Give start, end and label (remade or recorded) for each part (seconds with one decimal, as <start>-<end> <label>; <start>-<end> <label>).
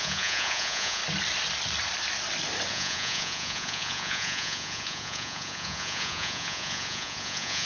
0.0-1.0 remade; 1.0-2.7 recorded; 2.7-7.7 remade